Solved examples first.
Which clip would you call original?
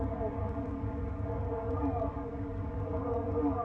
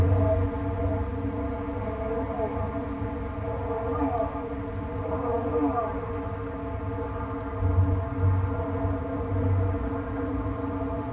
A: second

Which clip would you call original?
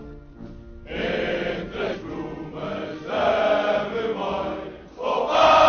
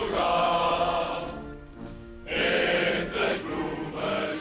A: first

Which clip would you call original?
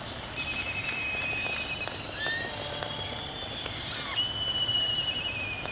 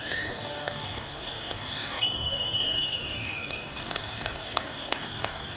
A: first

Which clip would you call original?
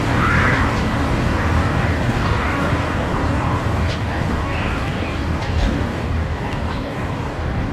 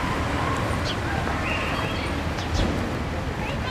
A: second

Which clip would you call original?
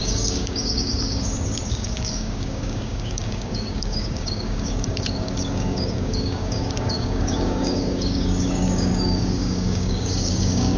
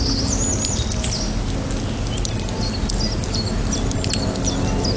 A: second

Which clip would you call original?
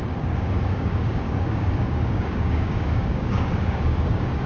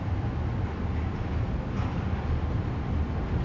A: second